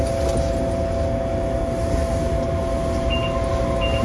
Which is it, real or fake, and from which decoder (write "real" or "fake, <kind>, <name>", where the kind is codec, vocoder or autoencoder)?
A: real